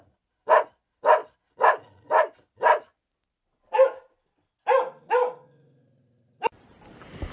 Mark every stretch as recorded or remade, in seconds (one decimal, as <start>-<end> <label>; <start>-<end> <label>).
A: 0.0-7.3 recorded